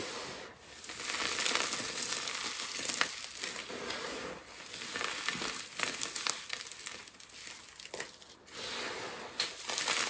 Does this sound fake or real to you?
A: real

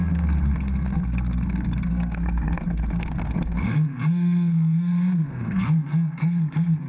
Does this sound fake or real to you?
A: fake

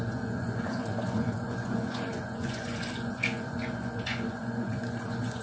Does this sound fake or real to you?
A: fake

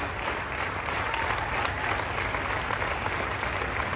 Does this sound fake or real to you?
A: real